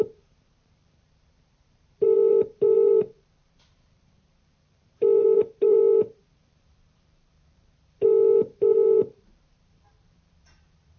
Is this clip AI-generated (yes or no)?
yes